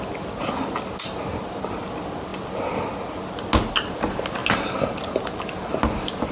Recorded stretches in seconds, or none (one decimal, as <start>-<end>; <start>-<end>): 0.0-6.3